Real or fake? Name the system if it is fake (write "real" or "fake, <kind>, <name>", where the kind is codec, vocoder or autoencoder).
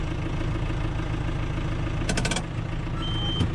real